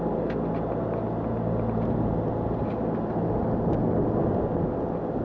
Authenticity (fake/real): real